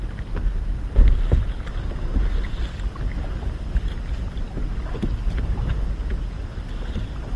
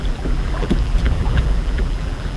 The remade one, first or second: second